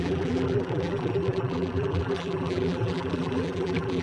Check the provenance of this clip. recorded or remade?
remade